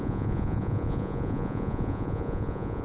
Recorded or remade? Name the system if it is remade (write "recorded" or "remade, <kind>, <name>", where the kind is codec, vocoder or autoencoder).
remade, vocoder, Vocos